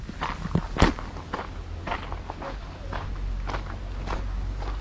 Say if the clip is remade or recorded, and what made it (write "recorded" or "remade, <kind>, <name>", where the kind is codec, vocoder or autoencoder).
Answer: recorded